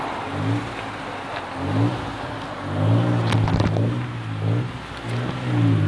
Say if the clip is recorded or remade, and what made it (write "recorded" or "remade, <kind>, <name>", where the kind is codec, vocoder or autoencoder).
recorded